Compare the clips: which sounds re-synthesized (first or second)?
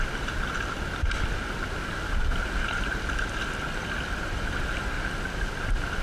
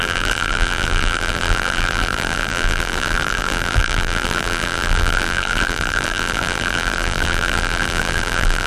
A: second